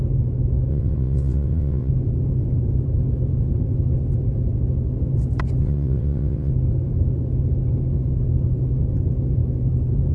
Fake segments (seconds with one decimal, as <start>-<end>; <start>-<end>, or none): 0.7-1.9; 5.6-6.5